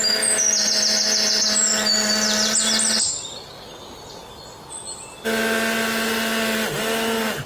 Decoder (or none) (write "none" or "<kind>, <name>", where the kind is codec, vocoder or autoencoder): none